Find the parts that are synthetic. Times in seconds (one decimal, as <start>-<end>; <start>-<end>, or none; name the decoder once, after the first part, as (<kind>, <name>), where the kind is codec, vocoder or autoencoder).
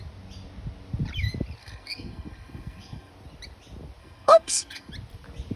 1.6-3.1 (codec, SNAC); 4.0-4.9